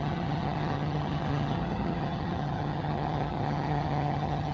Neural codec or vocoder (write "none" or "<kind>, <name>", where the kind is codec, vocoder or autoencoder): vocoder, HiFi-GAN